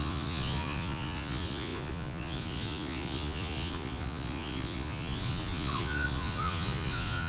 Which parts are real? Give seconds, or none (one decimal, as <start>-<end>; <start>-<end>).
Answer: none